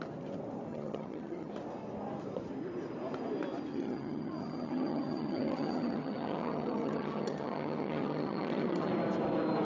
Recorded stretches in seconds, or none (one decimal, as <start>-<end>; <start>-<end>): 0.0-0.7; 1.5-3.7; 8.9-9.6